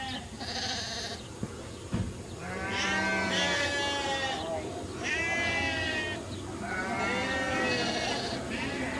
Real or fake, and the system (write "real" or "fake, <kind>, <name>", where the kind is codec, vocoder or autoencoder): real